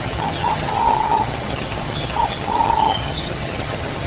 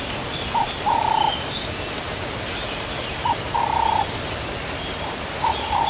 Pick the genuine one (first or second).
second